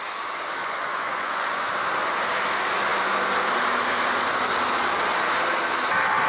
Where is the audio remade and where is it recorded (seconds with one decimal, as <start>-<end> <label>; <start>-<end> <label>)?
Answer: 0.0-0.6 recorded; 0.6-1.7 remade; 1.7-6.3 recorded